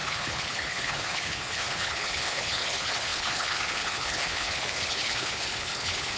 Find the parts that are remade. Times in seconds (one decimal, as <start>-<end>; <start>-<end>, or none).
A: 0.0-6.2